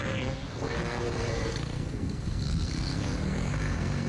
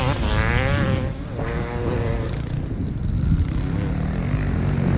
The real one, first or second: second